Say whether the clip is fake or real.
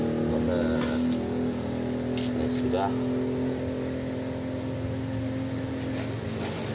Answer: real